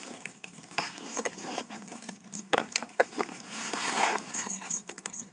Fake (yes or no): yes